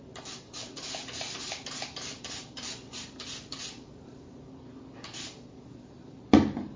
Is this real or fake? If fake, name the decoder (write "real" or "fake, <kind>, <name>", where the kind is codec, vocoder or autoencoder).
real